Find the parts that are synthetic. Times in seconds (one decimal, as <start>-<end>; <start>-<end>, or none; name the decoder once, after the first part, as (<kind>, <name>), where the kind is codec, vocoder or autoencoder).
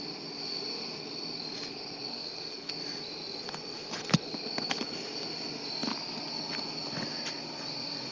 2.1-2.7 (codec, SNAC)